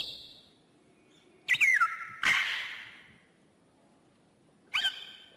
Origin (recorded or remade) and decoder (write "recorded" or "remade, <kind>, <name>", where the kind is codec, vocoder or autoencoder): recorded